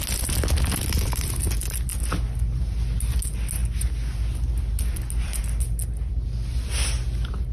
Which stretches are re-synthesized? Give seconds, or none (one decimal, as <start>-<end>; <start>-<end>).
none